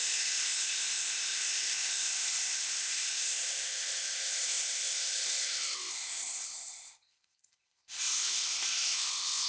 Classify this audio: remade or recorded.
remade